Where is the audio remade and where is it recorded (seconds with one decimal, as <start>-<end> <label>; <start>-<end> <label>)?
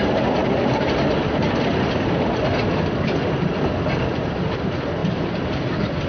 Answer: 0.0-0.4 remade; 0.4-4.1 recorded; 4.1-6.1 remade